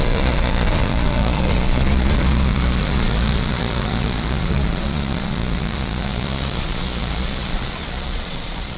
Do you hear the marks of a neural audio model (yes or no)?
yes